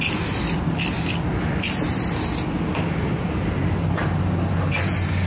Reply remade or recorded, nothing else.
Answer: recorded